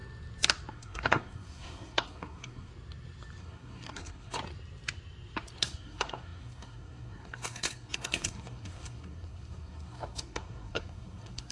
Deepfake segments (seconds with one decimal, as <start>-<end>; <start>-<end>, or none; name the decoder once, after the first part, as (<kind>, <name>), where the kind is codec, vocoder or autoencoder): 0.7-2.7 (codec, SNAC); 3.4-4.4; 5.6-11.5